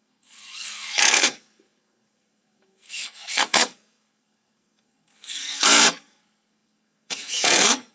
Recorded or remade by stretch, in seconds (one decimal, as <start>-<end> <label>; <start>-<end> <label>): 0.0-7.9 remade